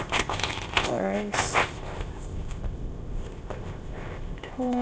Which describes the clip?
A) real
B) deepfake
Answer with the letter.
B